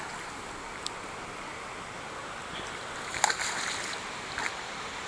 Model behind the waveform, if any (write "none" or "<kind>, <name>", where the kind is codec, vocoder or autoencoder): none